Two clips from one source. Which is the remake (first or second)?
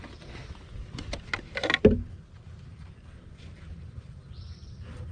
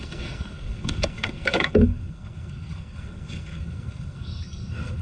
second